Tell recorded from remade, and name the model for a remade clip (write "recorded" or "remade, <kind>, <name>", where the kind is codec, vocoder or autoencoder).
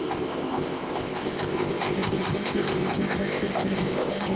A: remade, codec, ZipCodec